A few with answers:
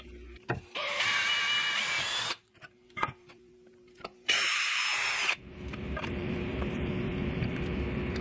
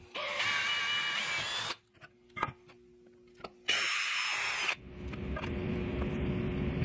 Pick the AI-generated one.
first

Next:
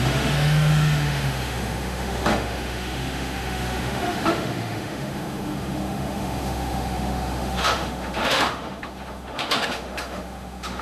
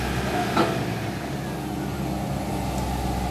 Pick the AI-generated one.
first